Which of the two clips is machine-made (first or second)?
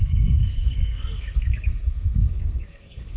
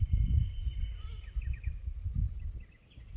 first